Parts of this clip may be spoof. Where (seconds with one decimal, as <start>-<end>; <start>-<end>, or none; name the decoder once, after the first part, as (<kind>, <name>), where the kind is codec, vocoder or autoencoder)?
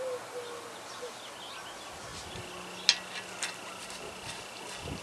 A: none